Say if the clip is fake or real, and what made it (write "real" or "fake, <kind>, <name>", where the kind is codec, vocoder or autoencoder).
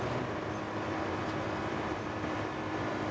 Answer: fake, vocoder, BigVGAN v2